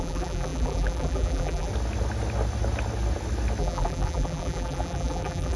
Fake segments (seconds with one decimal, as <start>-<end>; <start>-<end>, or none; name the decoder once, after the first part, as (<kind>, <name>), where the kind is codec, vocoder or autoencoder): 0.0-1.7 (vocoder, BigVGAN v2); 3.6-5.6